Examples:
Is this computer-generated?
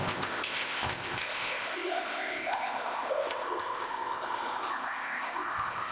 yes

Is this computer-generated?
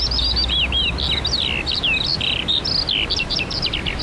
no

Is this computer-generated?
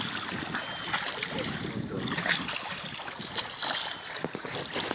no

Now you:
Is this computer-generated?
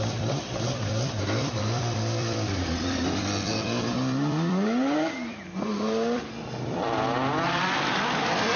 yes